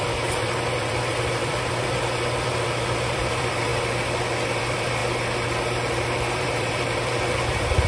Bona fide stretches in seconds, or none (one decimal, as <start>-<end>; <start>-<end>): 3.7-4.5; 5.0-6.4